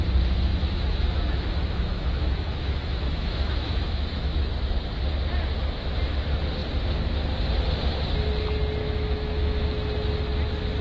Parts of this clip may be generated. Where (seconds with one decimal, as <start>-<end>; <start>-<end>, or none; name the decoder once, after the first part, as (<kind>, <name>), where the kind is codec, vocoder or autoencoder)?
0.5-4.5 (autoencoder, DAC-VAE); 8.8-9.6